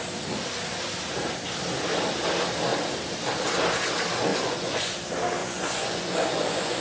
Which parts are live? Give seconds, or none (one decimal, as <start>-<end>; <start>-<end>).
0.0-4.3; 4.9-5.4